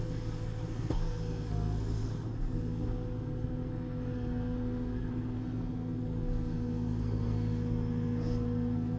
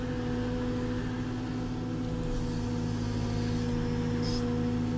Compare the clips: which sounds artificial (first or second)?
first